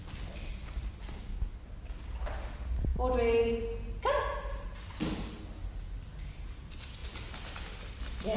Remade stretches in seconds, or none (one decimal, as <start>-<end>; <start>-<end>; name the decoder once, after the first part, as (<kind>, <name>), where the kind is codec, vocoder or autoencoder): none

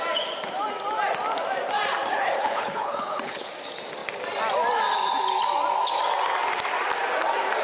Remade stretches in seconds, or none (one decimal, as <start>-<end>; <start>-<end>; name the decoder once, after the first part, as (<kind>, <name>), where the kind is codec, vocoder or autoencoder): 2.1-3.5 (codec, HILCodec)

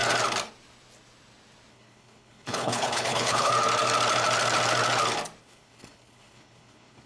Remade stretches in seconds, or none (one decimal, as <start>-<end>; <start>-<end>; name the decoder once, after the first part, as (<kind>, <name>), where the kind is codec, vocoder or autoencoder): 1.7-3.5 (codec, HILCodec); 5.4-7.1

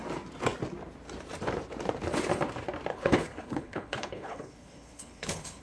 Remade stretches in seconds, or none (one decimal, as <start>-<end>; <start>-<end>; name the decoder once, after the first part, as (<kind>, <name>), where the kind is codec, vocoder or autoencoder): 2.9-5.6 (codec, HILCodec)

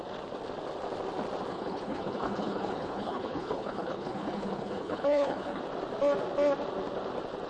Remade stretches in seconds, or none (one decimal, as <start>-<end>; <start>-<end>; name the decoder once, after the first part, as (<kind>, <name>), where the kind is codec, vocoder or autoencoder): 1.5-5.6 (codec, HILCodec)

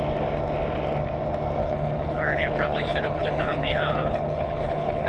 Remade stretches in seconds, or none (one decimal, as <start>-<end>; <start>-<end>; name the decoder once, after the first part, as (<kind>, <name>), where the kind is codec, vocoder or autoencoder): 1.6-5.1 (codec, HILCodec)